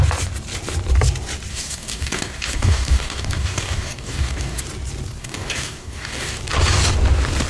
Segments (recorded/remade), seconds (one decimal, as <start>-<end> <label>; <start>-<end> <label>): 0.0-1.5 recorded; 1.5-4.6 remade; 4.6-5.2 recorded; 5.2-6.4 remade; 6.4-7.5 recorded